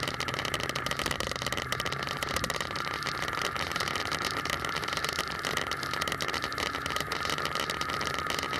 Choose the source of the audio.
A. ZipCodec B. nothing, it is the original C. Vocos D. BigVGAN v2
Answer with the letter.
D